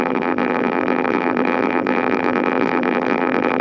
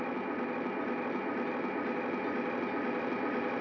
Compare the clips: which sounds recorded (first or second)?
second